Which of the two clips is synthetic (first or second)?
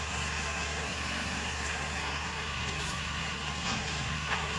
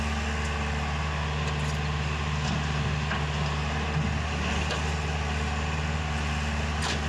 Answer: first